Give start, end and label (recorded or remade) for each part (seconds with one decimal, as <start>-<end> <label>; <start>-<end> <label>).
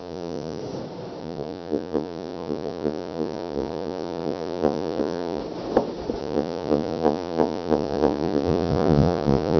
0.0-0.6 remade; 0.6-1.2 recorded; 1.2-5.4 remade; 5.4-6.2 recorded; 6.2-9.6 remade